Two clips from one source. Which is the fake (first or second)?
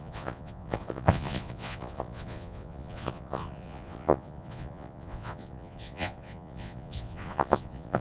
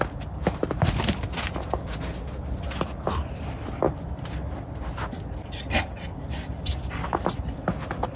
first